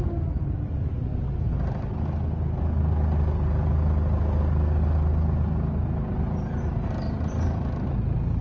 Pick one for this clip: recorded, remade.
recorded